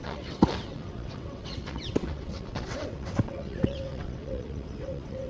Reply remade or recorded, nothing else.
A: remade